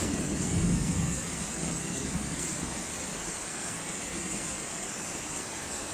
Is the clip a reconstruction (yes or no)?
yes